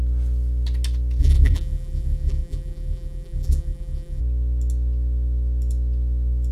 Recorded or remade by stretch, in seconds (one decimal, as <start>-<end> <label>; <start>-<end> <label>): 0.0-1.2 recorded; 1.2-4.2 remade; 4.2-6.5 recorded